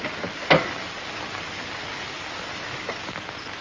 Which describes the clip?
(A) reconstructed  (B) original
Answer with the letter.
B